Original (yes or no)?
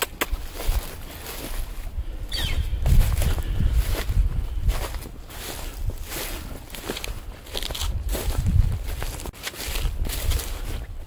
yes